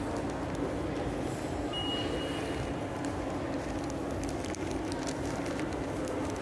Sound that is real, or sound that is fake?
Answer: real